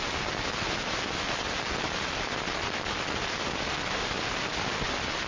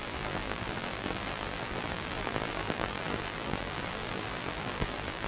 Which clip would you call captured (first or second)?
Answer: first